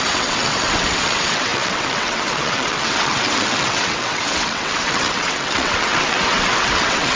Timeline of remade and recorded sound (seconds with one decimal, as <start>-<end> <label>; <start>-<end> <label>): 0.0-7.2 remade